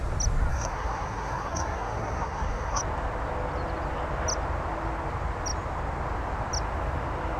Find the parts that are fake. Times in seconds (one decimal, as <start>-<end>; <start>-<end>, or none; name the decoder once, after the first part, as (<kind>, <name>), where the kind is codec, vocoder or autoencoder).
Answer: 0.5-2.8 (codec, SNAC)